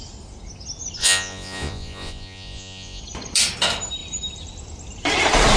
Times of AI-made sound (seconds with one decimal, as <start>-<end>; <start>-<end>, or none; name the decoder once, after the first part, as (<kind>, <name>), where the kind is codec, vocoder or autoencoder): 1.0-3.0 (vocoder, Vocos)